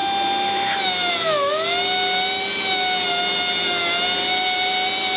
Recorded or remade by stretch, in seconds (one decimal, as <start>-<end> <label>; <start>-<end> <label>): 0.0-5.2 recorded